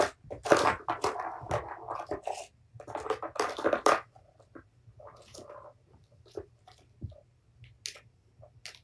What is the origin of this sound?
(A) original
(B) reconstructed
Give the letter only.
A